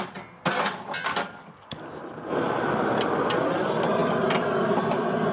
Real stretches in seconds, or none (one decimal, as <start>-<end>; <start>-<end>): 0.0-1.1; 2.0-5.3